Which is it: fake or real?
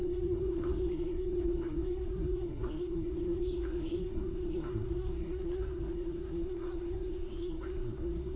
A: fake